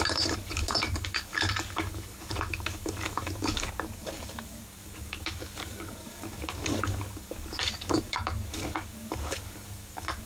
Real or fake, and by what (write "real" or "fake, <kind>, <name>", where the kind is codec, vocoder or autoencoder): fake, codec, DAC